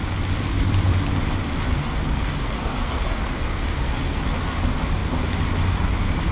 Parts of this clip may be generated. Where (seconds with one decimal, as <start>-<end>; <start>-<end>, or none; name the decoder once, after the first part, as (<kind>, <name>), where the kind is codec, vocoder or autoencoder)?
1.7-4.2 (codec, SNAC)